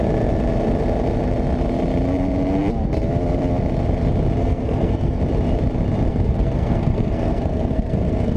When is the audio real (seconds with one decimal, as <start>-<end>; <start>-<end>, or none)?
0.0-4.4; 5.2-6.1